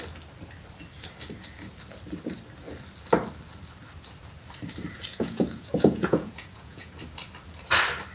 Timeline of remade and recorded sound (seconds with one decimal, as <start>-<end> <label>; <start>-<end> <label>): 0.0-5.1 recorded; 5.1-6.9 remade; 6.9-8.1 recorded